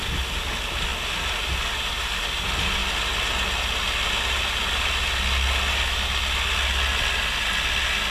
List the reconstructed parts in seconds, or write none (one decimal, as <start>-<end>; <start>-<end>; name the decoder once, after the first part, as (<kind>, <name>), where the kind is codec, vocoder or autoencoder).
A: none